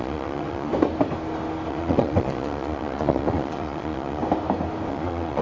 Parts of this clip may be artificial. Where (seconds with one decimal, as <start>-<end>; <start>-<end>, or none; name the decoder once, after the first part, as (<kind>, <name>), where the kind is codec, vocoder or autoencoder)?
0.0-0.7 (vocoder, Vocos); 1.7-4.2; 4.9-5.4